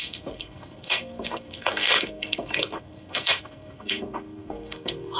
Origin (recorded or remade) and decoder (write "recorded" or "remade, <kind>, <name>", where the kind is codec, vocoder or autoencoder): remade, codec, SNAC